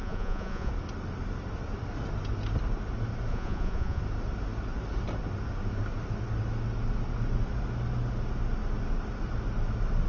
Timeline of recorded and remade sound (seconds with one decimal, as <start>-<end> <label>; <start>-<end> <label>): 0.0-0.7 remade; 0.7-3.3 recorded; 3.3-4.0 remade; 4.0-10.1 recorded